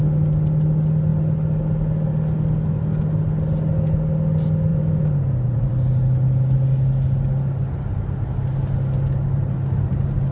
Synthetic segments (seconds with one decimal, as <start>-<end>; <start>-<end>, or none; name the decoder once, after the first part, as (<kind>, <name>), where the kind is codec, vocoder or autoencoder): 4.7-5.7 (vocoder, Vocos)

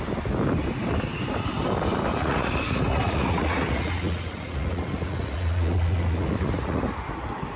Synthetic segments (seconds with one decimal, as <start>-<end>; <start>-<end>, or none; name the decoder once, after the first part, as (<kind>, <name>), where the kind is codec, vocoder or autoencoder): 2.2-6.8 (vocoder, Vocos)

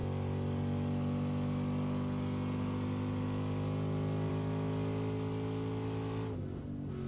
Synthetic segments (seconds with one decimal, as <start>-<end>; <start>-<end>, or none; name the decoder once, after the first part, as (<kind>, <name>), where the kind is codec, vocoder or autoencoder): none

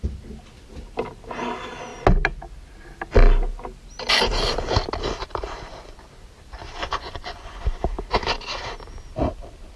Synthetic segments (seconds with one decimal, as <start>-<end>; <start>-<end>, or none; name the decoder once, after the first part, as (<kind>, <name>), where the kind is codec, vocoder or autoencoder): 6.8-7.6 (vocoder, Vocos)

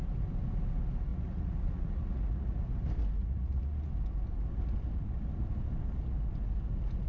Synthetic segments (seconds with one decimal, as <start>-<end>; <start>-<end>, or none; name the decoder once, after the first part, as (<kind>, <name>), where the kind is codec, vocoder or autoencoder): 1.1-2.6 (vocoder, Vocos); 3.2-3.9

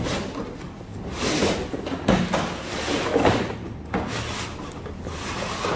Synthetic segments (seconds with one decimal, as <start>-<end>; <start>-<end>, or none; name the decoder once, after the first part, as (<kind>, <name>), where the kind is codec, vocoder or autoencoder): none

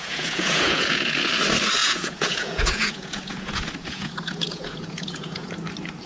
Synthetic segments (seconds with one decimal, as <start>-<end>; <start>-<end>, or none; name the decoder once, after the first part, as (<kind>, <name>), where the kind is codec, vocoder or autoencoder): 0.0-1.3 (vocoder, Vocos); 1.8-5.5